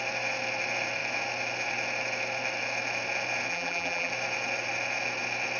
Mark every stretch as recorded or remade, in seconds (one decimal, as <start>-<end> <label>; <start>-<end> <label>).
0.0-3.5 recorded; 3.5-4.1 remade; 4.1-5.6 recorded